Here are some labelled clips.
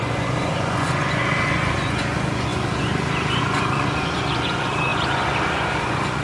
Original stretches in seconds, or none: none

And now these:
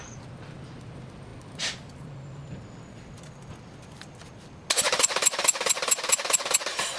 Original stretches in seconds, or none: 0.0-7.0

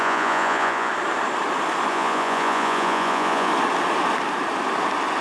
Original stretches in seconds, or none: 0.9-1.9; 3.5-5.2

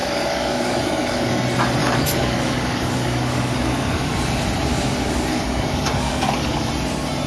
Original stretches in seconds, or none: 1.3-1.8; 4.1-4.7; 6.7-7.3